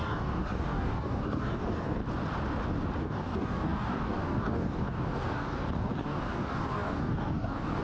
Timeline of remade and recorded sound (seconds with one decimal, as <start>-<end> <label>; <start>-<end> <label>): 0.0-2.0 remade; 2.0-3.0 recorded; 3.0-7.8 remade